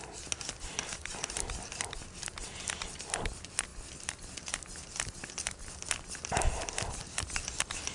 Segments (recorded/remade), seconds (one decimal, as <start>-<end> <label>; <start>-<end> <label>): 0.0-7.9 recorded